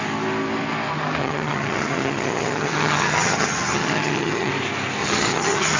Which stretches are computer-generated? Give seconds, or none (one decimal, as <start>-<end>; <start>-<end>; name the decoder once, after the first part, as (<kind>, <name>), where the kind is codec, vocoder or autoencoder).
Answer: 1.2-4.5 (vocoder, HiFi-GAN); 5.0-5.8